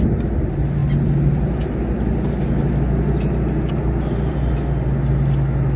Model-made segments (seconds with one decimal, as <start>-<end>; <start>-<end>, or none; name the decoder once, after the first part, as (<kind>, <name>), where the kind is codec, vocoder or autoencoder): none